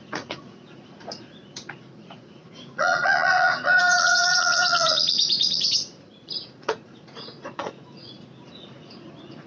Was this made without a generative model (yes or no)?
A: no